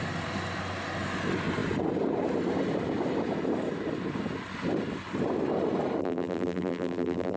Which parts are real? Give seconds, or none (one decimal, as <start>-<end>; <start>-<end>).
0.0-6.0